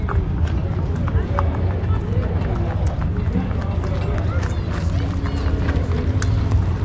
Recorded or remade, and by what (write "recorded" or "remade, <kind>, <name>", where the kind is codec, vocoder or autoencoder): recorded